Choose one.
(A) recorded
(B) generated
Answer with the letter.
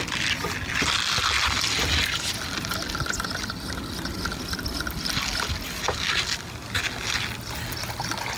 A